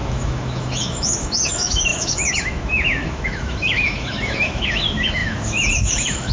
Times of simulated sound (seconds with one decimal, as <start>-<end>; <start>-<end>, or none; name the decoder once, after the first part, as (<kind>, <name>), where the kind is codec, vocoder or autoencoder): 0.0-6.3 (autoencoder, DAC-VAE)